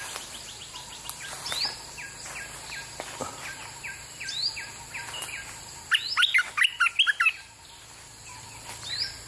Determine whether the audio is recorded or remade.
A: recorded